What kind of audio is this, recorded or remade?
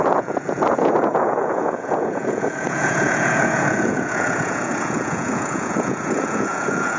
remade